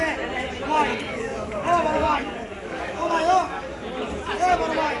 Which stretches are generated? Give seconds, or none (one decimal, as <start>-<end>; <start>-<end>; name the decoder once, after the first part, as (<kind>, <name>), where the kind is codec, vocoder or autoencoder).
0.9-3.9 (codec, DAC)